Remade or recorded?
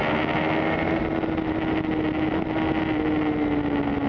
recorded